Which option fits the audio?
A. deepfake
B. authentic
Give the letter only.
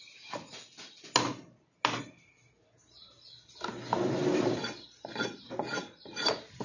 B